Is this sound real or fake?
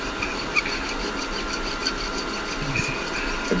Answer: real